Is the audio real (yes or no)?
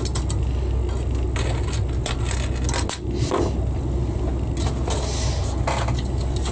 yes